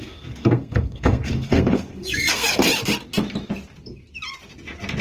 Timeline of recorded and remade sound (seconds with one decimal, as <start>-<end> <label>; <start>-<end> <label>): 0.0-2.7 remade; 2.7-5.0 recorded